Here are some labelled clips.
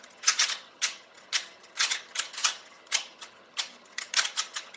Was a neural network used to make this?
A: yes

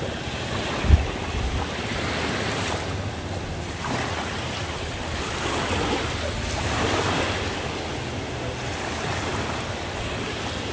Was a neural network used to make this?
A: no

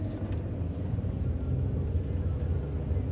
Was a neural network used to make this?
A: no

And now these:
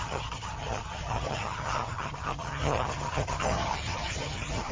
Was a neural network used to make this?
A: yes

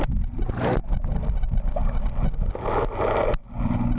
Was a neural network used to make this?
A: no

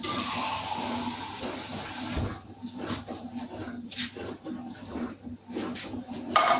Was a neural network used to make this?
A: no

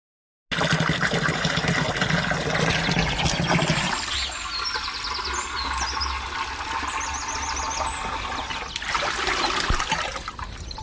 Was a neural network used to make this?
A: no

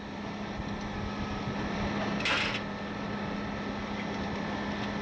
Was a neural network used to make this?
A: no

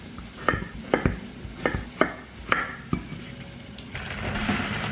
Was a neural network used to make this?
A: no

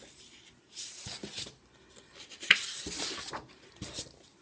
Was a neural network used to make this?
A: no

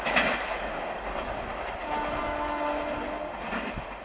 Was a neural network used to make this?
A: no